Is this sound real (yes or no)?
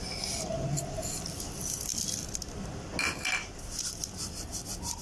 yes